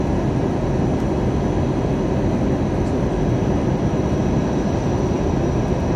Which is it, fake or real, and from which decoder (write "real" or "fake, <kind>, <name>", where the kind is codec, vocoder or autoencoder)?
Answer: real